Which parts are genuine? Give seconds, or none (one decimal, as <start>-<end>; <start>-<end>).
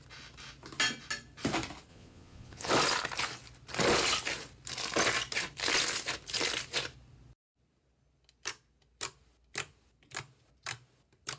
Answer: 0.0-1.9; 2.7-11.4